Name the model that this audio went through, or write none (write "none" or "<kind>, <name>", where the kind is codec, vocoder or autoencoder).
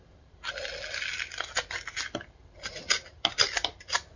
none